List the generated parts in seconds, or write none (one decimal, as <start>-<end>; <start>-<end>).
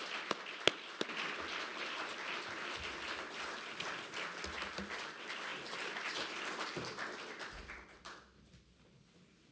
none